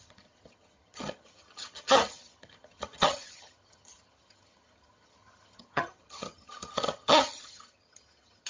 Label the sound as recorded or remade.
remade